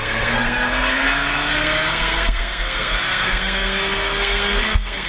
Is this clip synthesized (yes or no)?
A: yes